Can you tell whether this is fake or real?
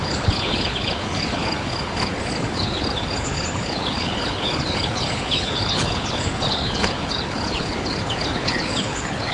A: fake